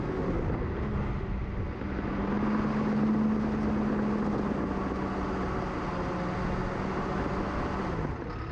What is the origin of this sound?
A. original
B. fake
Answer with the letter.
A